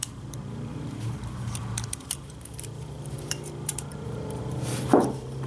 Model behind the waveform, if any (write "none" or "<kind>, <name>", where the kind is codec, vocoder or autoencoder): vocoder, BigVGAN v2